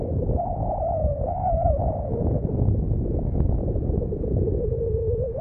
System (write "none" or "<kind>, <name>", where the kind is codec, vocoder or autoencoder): autoencoder, DAC-VAE